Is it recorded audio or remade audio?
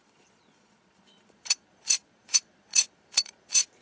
remade